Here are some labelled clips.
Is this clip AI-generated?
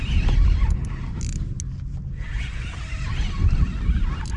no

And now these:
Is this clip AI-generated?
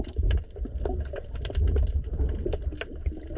no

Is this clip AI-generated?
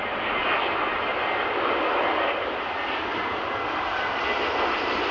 no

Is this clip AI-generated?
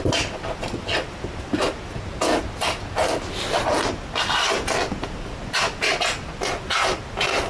no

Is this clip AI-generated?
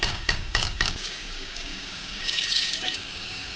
yes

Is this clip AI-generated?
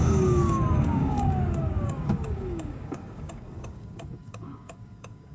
yes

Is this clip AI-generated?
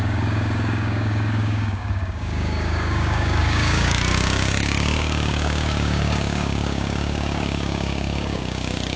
yes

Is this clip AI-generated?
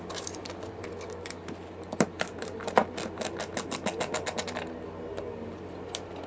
no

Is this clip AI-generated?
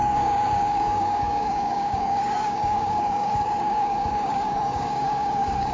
yes